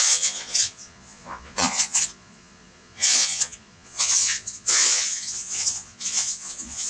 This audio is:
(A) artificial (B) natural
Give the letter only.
A